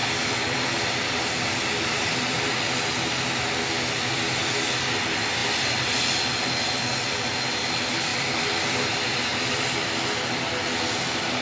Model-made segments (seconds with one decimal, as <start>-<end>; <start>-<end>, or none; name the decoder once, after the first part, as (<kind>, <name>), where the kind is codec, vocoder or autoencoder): 0.0-2.5 (vocoder, BigVGAN v2); 5.4-6.0; 8.1-10.4